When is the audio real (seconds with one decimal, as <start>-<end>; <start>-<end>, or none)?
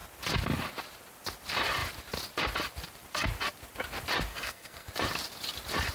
0.0-4.3; 4.9-5.9